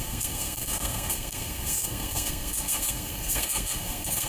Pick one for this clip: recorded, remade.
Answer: remade